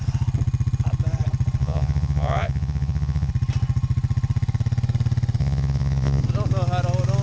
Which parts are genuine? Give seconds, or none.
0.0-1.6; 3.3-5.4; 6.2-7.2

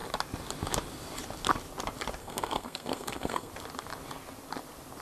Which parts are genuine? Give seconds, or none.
0.0-2.2; 3.5-5.0

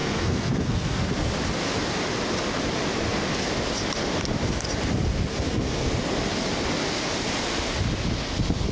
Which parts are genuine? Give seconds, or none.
1.3-5.3; 5.9-8.7

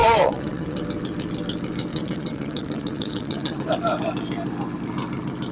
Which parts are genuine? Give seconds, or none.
0.8-1.9; 3.7-5.5

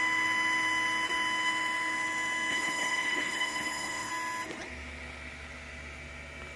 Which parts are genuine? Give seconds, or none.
0.0-2.5; 4.1-6.6